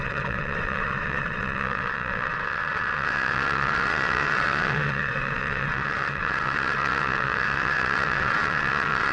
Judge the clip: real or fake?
fake